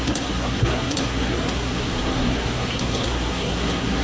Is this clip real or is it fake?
fake